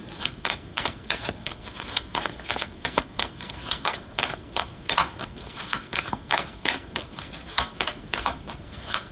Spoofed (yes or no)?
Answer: yes